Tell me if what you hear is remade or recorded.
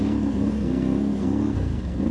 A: remade